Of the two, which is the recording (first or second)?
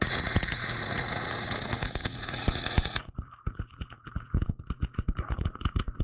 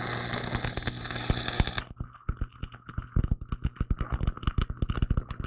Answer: second